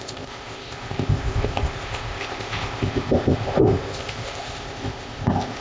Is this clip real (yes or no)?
no